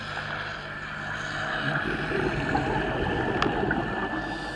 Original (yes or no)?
yes